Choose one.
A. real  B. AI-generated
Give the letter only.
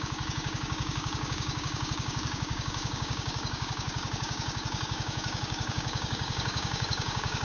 B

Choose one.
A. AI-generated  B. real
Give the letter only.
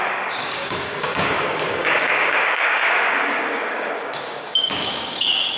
A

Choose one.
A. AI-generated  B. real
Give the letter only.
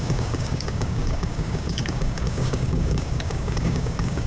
A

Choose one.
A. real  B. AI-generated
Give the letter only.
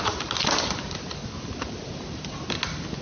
A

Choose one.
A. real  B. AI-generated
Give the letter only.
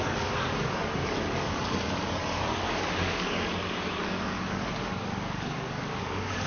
B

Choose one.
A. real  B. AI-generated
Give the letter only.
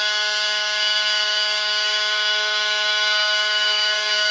B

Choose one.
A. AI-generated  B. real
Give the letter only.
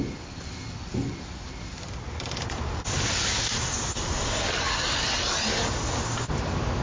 B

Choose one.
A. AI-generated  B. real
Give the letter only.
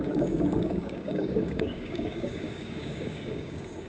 A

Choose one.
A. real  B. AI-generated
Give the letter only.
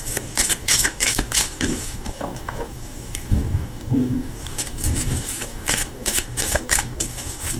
B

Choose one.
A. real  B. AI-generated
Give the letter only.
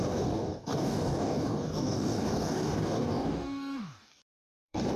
B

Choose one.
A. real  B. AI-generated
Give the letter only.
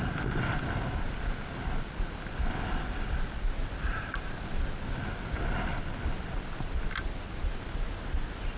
A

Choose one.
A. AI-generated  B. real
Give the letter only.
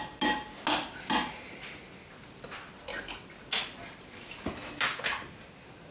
B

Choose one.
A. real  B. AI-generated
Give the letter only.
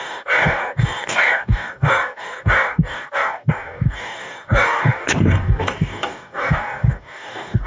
B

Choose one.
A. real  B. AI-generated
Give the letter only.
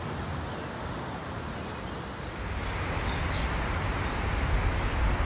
A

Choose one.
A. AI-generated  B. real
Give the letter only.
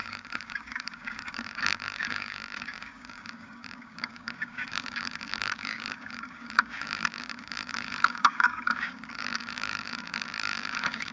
A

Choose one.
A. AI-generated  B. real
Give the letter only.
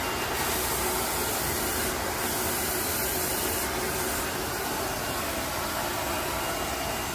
B